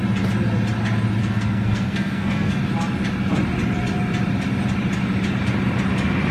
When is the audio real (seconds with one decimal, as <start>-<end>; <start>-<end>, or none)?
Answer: 0.0-1.2; 2.6-6.3